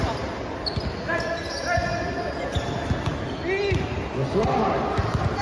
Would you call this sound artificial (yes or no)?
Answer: no